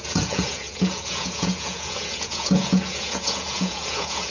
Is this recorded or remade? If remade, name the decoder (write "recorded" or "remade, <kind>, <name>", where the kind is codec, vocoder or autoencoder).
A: remade, vocoder, Vocos